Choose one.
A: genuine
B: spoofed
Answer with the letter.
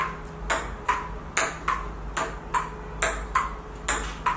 A